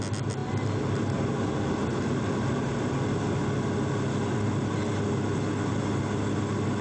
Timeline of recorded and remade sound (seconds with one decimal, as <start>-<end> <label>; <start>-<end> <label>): 0.0-6.8 recorded